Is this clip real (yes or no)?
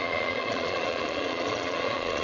no